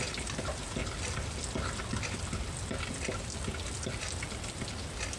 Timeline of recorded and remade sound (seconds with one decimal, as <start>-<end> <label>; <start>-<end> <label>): 0.0-5.2 recorded